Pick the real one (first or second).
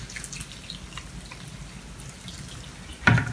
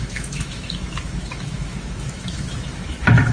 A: first